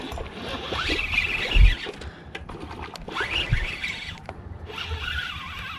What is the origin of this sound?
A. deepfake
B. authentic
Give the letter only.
B